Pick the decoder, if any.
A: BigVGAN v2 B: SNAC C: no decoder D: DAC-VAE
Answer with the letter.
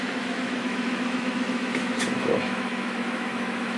D